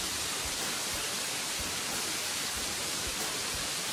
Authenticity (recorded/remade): recorded